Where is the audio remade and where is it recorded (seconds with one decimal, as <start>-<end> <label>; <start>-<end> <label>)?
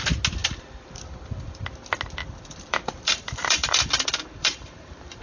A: 0.0-0.4 recorded; 0.4-1.6 remade; 1.6-2.2 recorded; 2.2-5.2 remade